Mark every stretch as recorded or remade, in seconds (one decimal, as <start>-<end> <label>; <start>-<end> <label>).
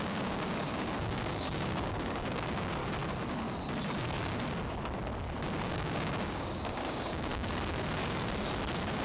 0.0-2.8 remade; 2.8-5.6 recorded; 5.6-7.3 remade; 7.3-9.0 recorded